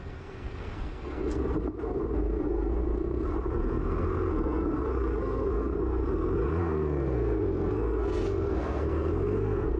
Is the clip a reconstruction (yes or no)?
yes